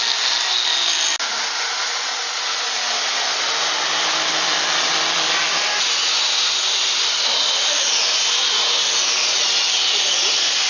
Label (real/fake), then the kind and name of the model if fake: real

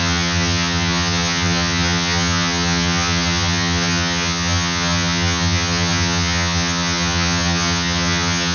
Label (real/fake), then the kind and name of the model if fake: fake, vocoder, HiFi-GAN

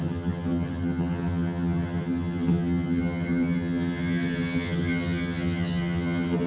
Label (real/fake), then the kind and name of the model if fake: fake, vocoder, HiFi-GAN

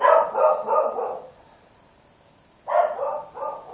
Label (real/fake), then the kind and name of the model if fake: real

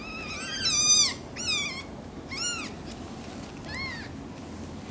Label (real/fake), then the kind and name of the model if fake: real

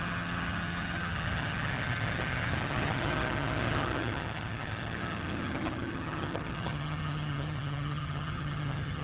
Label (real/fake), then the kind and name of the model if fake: fake, vocoder, HiFi-GAN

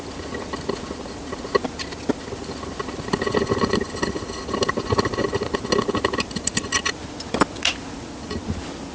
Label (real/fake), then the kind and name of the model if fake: real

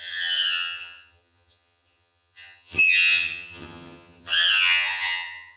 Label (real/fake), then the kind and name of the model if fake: fake, vocoder, HiFi-GAN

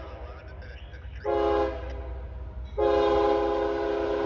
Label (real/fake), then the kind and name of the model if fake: real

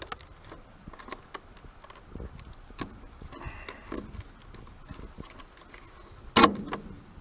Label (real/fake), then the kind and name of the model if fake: real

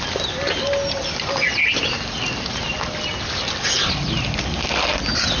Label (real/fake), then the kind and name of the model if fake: real